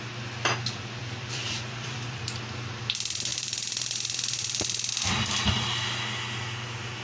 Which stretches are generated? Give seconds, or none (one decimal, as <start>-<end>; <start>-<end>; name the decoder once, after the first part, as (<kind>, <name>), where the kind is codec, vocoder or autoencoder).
1.0-2.2 (vocoder, BigVGAN v2); 3.3-4.9

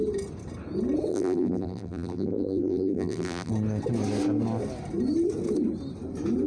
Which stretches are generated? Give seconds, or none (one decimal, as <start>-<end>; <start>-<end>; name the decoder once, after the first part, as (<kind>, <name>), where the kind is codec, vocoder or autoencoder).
1.1-3.5 (vocoder, BigVGAN v2)

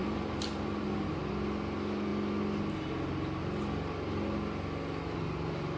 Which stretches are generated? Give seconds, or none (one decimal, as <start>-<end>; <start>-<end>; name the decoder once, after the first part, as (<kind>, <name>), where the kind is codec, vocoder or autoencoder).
0.0-1.3 (vocoder, BigVGAN v2)